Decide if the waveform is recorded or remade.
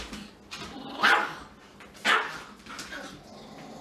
recorded